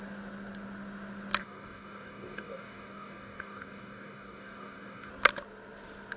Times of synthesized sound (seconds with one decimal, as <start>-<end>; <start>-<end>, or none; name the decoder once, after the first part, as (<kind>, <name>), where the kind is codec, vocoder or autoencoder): 1.4-5.1 (codec, DAC)